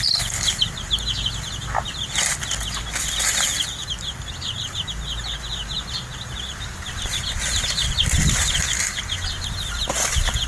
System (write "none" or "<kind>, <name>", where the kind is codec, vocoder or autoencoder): none